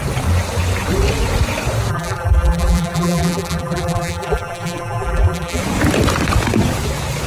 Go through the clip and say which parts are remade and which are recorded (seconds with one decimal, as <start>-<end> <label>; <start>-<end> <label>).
0.0-1.9 recorded; 1.9-5.6 remade; 5.6-7.3 recorded